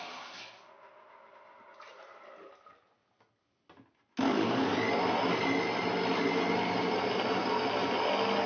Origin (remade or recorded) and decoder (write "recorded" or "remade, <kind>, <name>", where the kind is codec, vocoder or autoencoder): recorded